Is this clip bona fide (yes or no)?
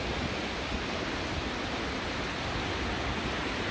yes